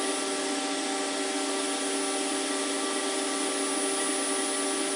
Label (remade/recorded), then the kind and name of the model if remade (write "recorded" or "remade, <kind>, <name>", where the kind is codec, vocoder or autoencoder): recorded